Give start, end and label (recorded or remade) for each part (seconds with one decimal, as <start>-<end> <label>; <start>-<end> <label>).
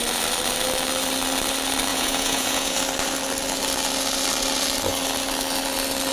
0.0-1.9 recorded; 1.9-2.8 remade; 2.8-6.1 recorded